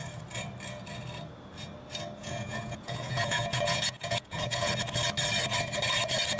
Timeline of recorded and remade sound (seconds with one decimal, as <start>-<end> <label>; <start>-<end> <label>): 0.0-2.2 recorded; 2.2-4.7 remade; 4.7-6.4 recorded